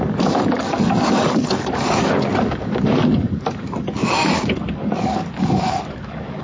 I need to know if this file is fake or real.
fake